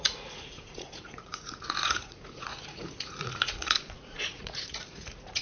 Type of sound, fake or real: fake